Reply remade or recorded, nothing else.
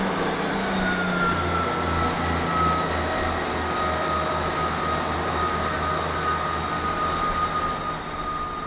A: recorded